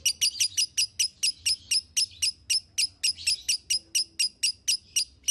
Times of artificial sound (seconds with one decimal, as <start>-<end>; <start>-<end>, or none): none